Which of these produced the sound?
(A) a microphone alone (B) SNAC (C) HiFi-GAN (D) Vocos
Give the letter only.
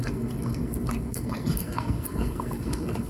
B